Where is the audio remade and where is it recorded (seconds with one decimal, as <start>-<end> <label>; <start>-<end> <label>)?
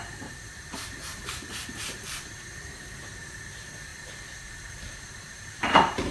0.0-6.1 remade